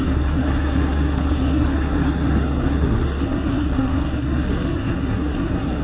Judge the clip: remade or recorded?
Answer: remade